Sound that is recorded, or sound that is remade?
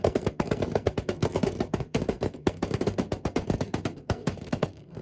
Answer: remade